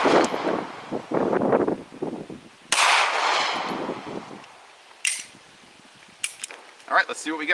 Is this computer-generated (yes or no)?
no